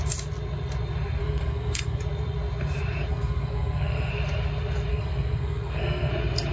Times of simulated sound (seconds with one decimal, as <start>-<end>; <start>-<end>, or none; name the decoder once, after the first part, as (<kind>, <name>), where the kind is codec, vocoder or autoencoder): 1.2-2.0 (codec, SNAC); 3.1-4.1; 4.9-6.1